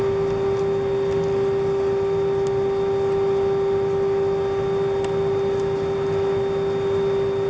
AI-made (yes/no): no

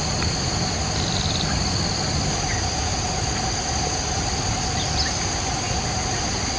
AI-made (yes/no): no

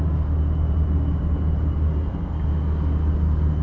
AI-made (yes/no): no